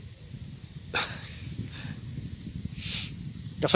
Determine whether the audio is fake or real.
real